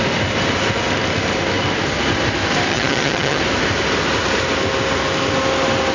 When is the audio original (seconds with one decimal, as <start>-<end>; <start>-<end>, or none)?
0.0-2.7; 3.4-5.9